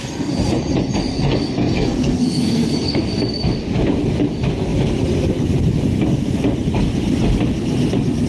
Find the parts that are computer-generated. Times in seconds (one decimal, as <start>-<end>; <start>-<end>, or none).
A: 1.1-3.0